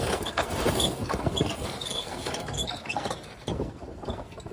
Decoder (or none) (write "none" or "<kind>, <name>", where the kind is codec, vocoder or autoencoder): codec, SNAC